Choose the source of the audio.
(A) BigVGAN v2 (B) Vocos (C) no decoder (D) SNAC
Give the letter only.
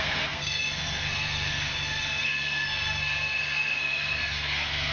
D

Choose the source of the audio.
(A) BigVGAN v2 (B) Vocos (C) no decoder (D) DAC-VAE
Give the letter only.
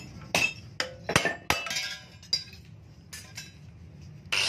C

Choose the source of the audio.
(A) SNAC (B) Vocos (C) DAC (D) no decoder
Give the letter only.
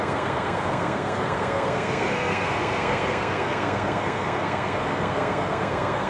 A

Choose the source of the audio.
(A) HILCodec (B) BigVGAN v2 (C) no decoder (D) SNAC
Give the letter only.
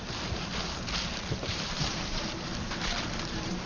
B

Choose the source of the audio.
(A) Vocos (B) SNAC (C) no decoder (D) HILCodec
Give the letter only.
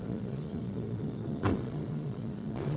A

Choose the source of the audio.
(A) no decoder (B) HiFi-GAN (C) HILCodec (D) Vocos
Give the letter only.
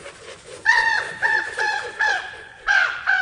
D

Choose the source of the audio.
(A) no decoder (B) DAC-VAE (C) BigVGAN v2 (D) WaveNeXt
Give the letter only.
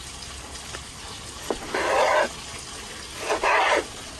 A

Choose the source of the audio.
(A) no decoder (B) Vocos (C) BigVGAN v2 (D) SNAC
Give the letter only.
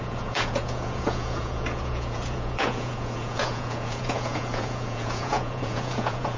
B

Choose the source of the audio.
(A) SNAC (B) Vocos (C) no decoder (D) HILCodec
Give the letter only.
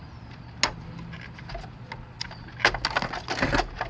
C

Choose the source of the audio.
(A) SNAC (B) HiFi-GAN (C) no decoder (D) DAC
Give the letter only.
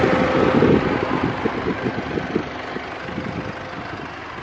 C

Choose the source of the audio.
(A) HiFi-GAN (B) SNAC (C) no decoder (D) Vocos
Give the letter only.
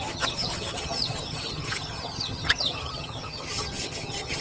A